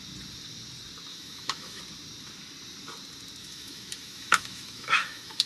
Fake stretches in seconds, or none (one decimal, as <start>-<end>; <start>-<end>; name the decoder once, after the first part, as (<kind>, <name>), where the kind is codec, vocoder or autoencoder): 1.1-1.8 (autoencoder, DAC-VAE); 3.4-5.5